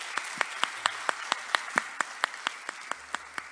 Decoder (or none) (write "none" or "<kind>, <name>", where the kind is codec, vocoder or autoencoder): none